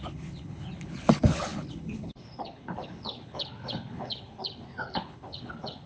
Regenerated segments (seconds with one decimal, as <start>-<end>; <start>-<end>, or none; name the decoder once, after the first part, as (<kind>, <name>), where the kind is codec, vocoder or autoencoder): 0.0-5.9 (codec, HILCodec)